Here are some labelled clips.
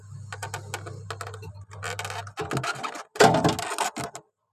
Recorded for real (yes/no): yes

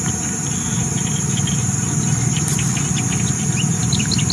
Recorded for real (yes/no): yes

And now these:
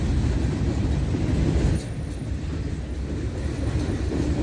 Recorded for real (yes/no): yes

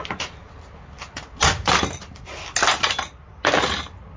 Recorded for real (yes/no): yes